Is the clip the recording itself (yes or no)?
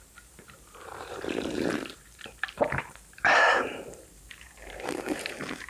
no